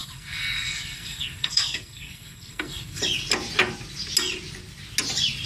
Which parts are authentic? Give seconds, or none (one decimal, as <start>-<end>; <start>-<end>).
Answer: 3.0-5.5